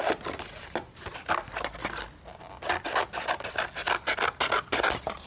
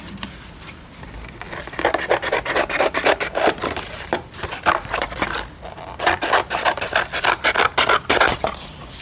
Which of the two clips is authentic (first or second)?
first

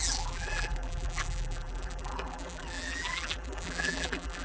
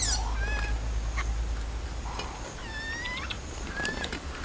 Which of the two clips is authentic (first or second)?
second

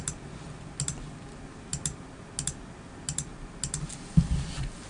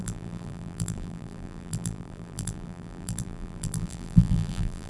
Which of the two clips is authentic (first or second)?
first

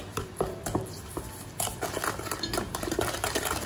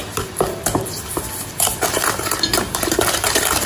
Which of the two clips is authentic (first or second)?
first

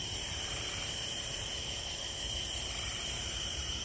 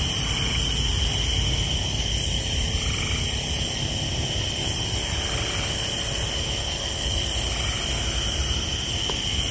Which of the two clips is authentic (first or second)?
second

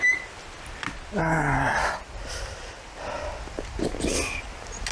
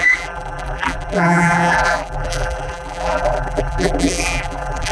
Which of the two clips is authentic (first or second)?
first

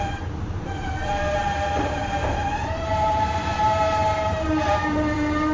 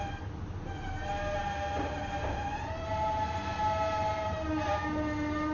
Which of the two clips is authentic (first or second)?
second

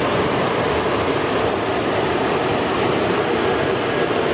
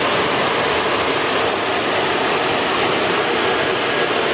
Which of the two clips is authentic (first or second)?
second